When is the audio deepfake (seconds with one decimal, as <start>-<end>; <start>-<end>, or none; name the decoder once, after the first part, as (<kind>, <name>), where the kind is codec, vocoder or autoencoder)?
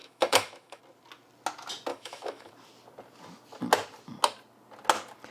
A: 0.0-0.8 (autoencoder, DAC-VAE); 1.9-2.5